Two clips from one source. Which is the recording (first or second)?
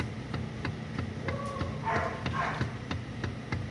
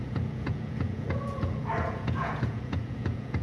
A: first